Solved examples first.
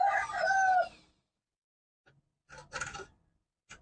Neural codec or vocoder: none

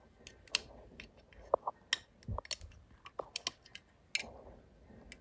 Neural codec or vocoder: none